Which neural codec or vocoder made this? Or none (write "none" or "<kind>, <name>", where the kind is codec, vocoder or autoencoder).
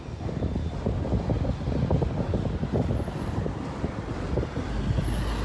none